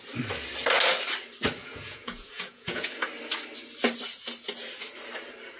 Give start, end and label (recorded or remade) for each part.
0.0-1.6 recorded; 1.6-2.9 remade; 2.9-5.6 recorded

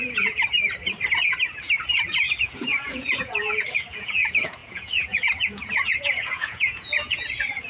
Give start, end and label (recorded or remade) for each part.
0.0-0.4 remade; 0.4-2.4 recorded; 2.4-7.7 remade